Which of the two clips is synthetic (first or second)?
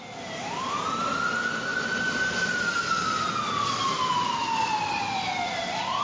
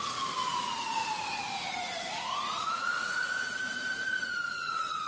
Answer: second